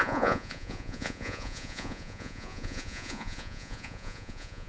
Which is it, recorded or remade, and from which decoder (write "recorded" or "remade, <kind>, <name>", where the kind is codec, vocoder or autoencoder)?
remade, vocoder, Vocos